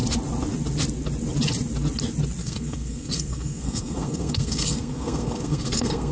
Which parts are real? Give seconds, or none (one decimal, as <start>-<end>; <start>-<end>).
0.0-2.4